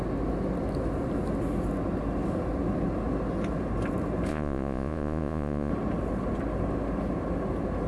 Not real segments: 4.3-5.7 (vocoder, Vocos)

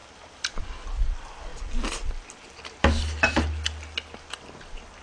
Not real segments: none

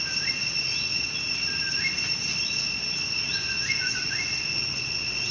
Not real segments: 3.3-4.0 (vocoder, Vocos)

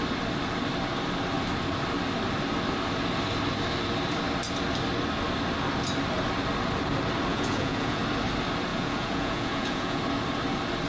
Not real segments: 7.3-8.0 (vocoder, Vocos); 8.7-10.0

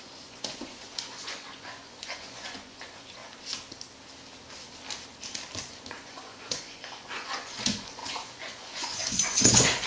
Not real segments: 0.0-3.2 (vocoder, Vocos); 5.7-9.9